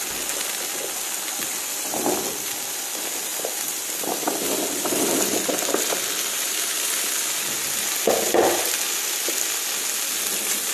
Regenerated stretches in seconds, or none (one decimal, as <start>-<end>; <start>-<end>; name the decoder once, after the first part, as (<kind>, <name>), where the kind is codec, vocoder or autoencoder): 3.3-3.8 (vocoder, BigVGAN v2)